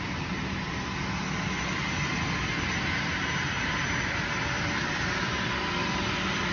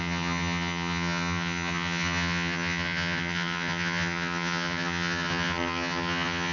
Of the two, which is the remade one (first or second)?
second